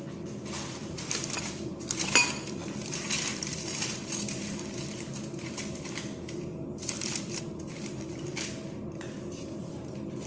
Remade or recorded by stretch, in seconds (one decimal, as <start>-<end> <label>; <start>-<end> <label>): 0.0-0.8 recorded; 0.8-4.4 remade; 4.4-6.5 recorded; 6.5-7.4 remade; 7.4-10.3 recorded